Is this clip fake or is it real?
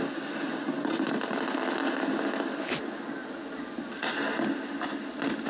real